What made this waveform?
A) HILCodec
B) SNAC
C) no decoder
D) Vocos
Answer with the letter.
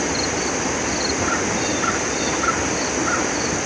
C